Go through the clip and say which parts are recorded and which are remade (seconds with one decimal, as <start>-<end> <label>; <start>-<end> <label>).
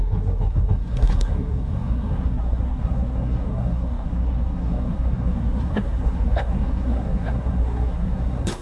0.0-8.6 remade